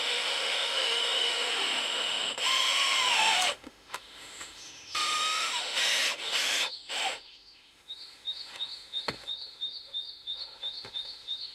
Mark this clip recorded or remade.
remade